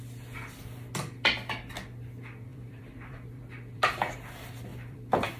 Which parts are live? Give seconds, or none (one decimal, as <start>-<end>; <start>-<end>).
0.0-2.5; 4.1-4.7